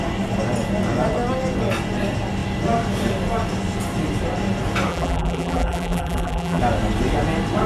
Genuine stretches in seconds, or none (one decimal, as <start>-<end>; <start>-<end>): 0.0-4.9; 6.6-7.7